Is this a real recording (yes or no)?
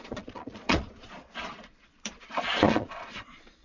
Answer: no